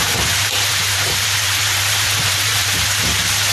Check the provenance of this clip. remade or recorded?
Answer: remade